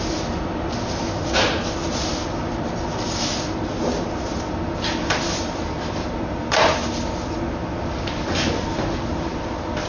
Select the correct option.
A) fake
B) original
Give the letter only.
B